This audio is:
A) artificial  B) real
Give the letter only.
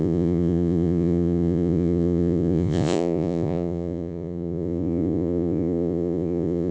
A